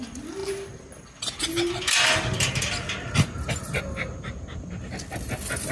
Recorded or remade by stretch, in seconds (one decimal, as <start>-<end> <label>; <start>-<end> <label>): 0.0-5.7 recorded